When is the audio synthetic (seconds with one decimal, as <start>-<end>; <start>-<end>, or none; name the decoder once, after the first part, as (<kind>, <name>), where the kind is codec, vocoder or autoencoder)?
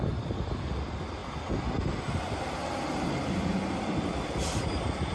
none